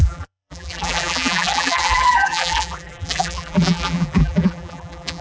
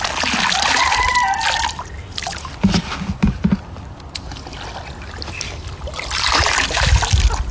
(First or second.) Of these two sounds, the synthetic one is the first